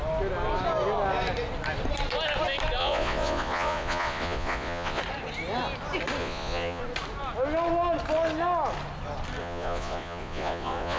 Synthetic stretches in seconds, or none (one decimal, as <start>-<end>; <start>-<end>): 2.8-5.0; 6.2-6.8; 9.4-11.0